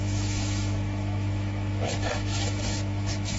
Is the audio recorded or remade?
remade